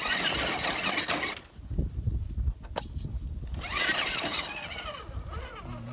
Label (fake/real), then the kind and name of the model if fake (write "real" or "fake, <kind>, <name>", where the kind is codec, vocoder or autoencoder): real